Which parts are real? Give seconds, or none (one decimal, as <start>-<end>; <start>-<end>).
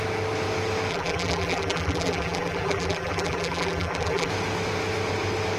0.0-0.9; 4.3-5.6